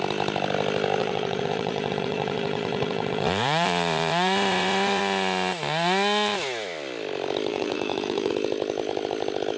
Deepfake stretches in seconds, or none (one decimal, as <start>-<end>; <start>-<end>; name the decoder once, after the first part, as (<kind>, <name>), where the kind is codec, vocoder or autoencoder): 1.0-5.0 (vocoder, Vocos); 7.5-8.3